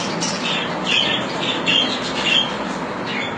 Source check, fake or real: real